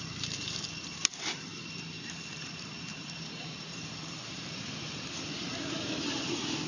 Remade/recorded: remade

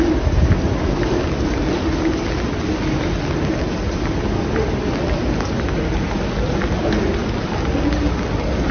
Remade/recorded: recorded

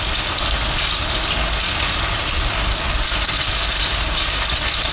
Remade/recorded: recorded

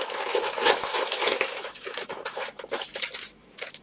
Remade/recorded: remade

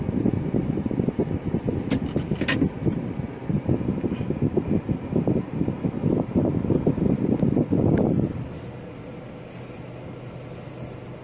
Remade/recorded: recorded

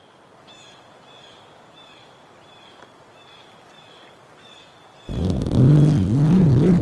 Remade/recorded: recorded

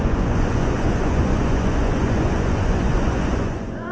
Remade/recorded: remade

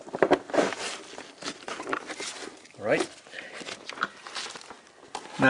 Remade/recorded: recorded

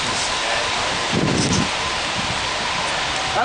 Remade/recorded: recorded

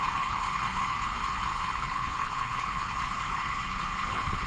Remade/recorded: remade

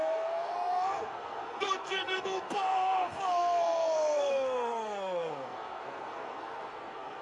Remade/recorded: remade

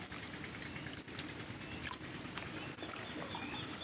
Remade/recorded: recorded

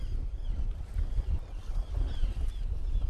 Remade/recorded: recorded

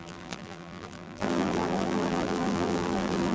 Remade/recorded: remade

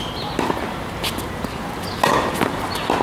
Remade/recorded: recorded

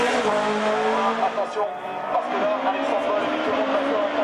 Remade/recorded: recorded